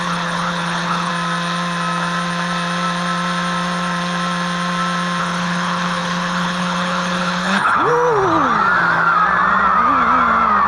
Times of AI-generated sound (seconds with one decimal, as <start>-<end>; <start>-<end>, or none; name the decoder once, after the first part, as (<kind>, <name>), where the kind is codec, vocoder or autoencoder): 0.0-1.1 (codec, HILCodec); 5.2-7.9